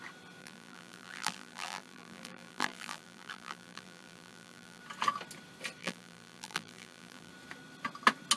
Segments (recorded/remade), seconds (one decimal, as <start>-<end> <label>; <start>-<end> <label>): 0.0-0.4 recorded; 0.4-4.8 remade; 4.8-5.8 recorded; 5.8-7.3 remade; 7.3-8.4 recorded